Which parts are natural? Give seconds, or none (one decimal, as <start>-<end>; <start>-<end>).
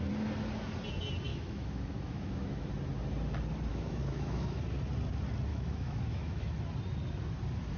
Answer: 0.0-1.3; 2.7-3.7; 4.6-5.5; 6.5-7.8